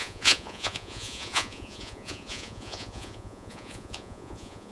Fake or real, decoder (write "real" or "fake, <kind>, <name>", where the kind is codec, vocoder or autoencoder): fake, vocoder, Vocos